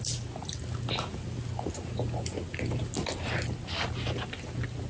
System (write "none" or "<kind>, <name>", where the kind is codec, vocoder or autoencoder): none